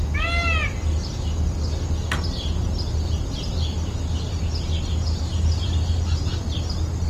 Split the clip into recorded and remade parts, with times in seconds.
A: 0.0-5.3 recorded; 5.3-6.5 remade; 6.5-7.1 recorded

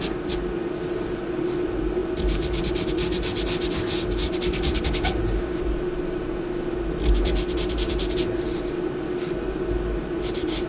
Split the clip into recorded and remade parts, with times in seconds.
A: 0.0-2.0 recorded; 2.0-2.6 remade; 2.6-10.7 recorded

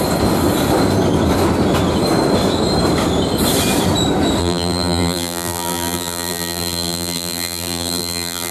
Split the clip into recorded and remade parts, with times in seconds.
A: 0.0-4.4 recorded; 4.4-8.5 remade